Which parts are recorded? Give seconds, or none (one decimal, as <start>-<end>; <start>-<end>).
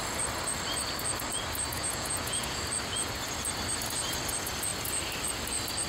0.0-1.7; 2.6-5.9